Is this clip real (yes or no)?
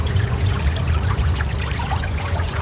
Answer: no